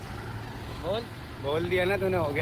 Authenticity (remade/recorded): recorded